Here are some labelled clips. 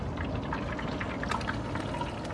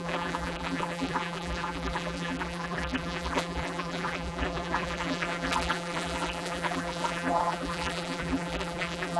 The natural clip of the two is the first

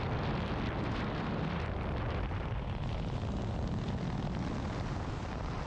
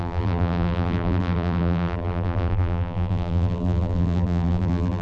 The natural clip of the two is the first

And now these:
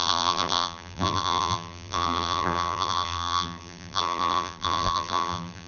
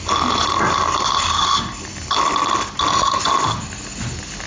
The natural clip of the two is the second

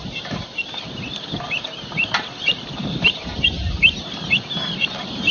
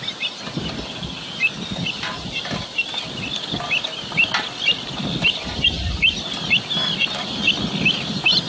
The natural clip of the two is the second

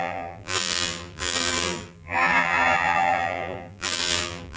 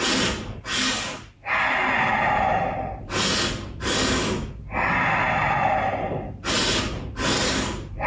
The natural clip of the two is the second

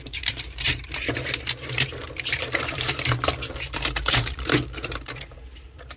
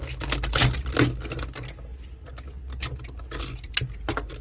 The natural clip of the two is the second